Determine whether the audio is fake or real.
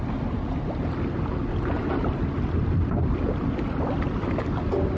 real